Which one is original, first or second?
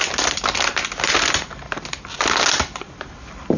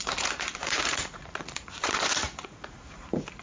first